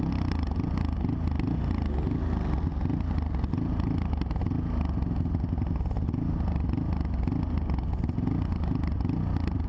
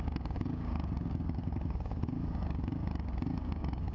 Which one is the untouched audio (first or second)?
first